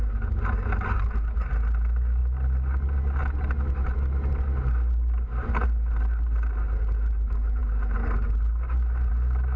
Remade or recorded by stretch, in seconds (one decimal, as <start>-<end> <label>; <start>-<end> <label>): 0.0-9.6 recorded

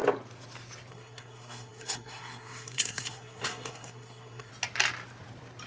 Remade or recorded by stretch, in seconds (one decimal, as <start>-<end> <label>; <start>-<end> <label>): 0.0-0.9 recorded; 0.9-4.5 remade; 4.5-5.7 recorded

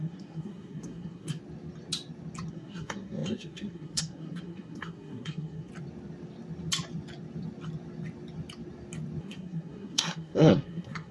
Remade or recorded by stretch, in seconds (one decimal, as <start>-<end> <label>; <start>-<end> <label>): 0.0-1.4 remade; 1.4-2.5 recorded; 2.5-5.7 remade; 5.7-9.2 recorded; 9.2-11.1 remade

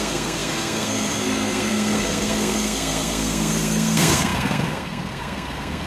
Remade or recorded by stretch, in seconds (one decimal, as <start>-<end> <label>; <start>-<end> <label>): 0.0-5.9 remade

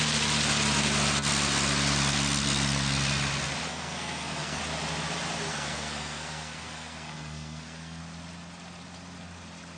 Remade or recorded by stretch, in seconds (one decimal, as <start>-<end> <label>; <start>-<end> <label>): 0.0-3.7 recorded; 3.7-4.6 remade; 4.6-5.5 recorded; 5.5-8.0 remade; 8.0-9.8 recorded

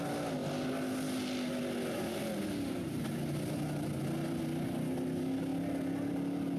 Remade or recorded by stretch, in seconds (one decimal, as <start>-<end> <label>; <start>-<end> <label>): 0.0-6.6 recorded

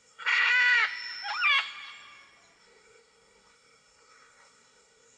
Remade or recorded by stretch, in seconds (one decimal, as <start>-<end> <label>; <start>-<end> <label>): 0.0-0.5 remade; 0.5-2.6 recorded; 2.6-5.2 remade